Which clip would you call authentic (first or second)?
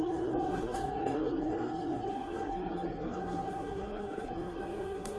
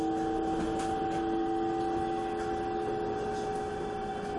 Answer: second